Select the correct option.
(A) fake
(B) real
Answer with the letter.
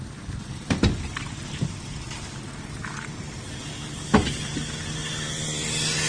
B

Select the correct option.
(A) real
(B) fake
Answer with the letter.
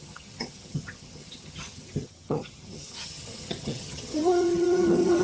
B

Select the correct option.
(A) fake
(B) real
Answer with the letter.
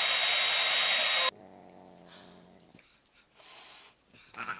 B